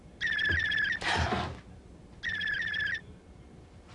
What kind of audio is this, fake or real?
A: real